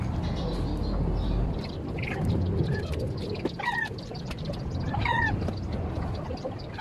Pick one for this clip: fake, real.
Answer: real